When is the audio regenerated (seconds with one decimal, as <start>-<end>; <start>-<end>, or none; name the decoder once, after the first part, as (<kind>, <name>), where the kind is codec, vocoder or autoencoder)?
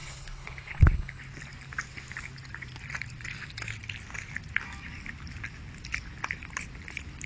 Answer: 0.0-1.2 (codec, HILCodec)